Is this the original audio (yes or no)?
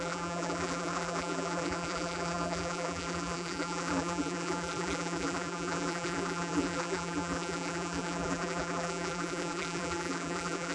no